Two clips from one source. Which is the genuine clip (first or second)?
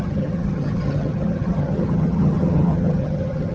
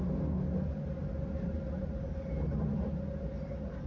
second